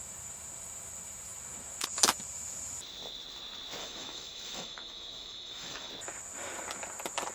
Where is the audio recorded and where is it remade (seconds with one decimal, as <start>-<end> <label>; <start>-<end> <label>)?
0.0-3.8 recorded; 3.8-5.9 remade; 5.9-7.3 recorded